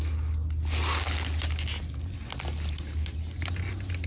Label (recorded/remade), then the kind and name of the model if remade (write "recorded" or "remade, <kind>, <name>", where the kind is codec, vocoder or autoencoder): recorded